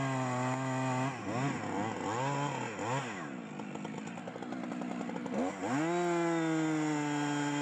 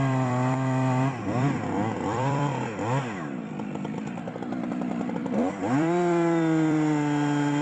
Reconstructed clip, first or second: second